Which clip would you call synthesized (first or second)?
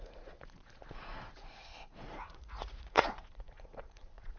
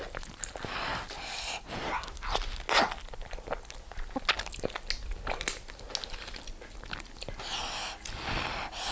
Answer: first